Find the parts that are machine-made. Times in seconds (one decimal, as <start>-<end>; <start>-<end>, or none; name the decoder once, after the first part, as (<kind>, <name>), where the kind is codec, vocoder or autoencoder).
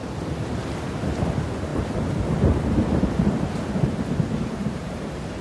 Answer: 1.2-1.7 (vocoder, BigVGAN v2); 4.4-5.4